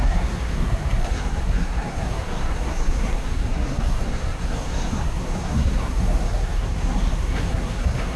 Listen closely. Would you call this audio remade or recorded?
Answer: remade